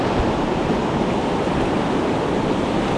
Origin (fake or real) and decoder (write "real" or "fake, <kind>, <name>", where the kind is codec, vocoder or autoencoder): fake, vocoder, BigVGAN v2